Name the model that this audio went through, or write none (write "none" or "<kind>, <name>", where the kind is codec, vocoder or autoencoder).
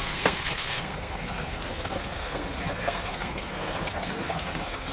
codec, SNAC